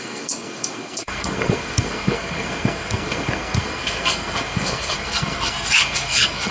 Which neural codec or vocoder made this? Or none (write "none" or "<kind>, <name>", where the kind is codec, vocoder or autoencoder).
codec, SNAC